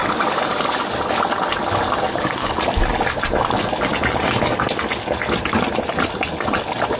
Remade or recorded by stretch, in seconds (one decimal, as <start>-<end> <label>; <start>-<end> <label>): 0.0-0.6 remade; 0.6-7.0 recorded